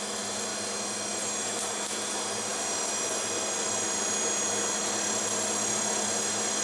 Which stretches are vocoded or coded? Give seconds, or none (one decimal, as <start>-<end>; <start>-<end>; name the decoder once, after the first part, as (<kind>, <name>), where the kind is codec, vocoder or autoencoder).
none